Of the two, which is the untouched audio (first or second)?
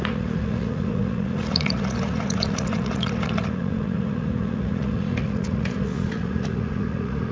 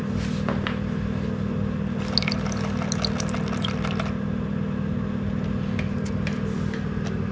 second